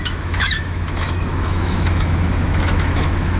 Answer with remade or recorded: remade